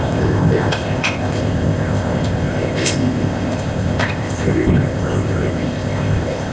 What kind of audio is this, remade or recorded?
remade